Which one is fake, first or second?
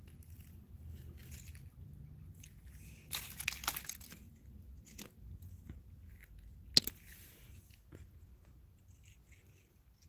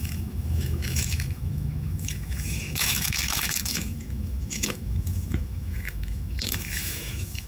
second